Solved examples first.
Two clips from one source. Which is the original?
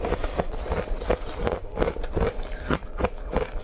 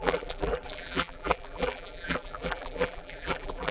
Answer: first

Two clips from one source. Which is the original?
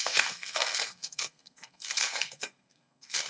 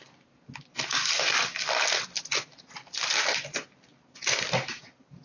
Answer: second